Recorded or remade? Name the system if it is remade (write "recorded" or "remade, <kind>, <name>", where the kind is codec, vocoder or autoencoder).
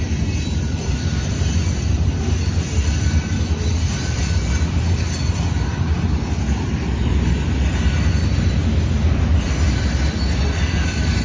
recorded